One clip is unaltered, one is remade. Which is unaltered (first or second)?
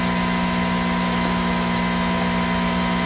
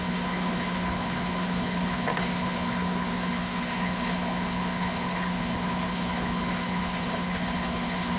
first